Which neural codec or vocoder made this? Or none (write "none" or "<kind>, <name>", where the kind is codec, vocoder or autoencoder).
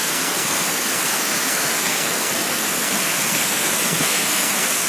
codec, SNAC